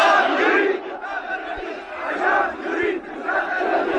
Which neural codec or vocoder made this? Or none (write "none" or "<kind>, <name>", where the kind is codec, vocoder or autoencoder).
vocoder, BigVGAN v2